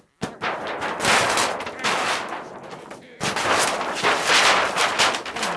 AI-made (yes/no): no